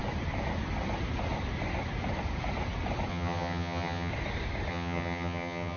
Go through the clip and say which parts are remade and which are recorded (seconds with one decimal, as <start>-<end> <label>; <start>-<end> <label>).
0.0-3.1 recorded; 3.1-4.1 remade; 4.1-4.7 recorded; 4.7-5.8 remade